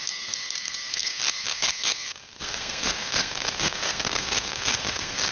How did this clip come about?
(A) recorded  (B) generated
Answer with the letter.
B